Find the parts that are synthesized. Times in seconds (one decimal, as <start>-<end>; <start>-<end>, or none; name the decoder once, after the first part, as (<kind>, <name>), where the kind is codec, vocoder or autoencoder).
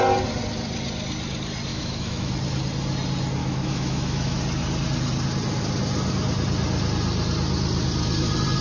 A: 1.7-2.3 (autoencoder, DAC-VAE); 3.4-4.4